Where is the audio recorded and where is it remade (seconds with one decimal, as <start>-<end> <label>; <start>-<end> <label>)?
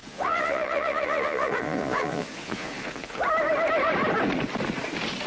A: 0.0-3.2 remade; 3.2-5.3 recorded